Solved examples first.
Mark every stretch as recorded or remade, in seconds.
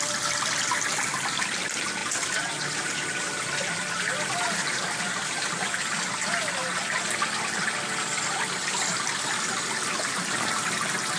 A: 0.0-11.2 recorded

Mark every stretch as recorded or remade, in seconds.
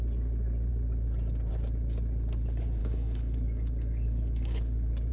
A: 0.0-2.8 recorded; 2.8-5.1 remade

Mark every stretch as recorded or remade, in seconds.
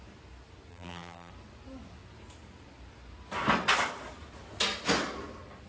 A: 0.0-0.7 recorded; 0.7-1.3 remade; 1.3-5.7 recorded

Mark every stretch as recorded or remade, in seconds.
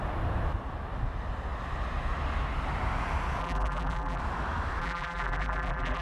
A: 0.0-3.4 recorded; 3.4-4.2 remade; 4.2-4.8 recorded; 4.8-6.0 remade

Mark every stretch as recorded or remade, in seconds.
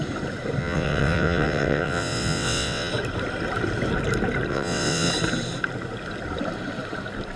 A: 0.0-0.6 recorded; 0.6-2.9 remade; 2.9-4.5 recorded; 4.5-5.1 remade; 5.1-7.4 recorded